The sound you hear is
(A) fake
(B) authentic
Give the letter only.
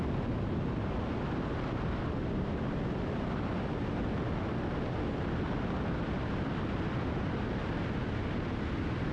B